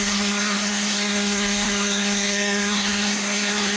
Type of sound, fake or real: fake